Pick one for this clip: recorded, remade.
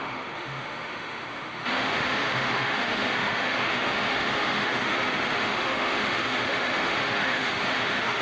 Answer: remade